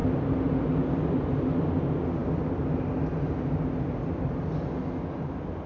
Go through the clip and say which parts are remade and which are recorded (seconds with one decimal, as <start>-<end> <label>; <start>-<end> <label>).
0.0-5.7 recorded